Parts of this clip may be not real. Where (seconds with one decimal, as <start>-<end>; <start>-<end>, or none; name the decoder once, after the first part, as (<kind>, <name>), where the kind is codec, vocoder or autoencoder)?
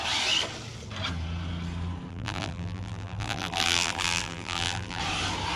2.1-5.0 (vocoder, BigVGAN v2)